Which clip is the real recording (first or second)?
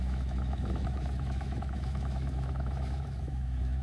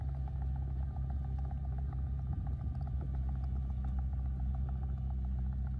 second